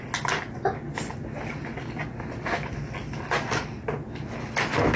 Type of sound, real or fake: real